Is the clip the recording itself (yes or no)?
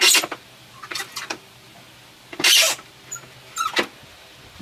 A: yes